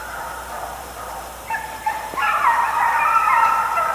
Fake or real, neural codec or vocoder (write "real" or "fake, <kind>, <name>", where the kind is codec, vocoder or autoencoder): fake, vocoder, BigVGAN v2